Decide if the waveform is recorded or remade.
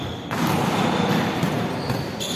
recorded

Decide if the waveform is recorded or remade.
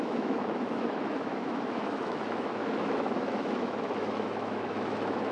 remade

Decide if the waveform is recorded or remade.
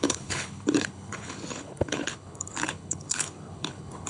remade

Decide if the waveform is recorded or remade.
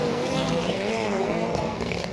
remade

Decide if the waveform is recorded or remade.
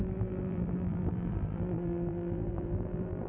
remade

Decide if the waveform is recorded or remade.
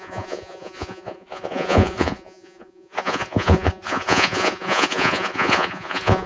remade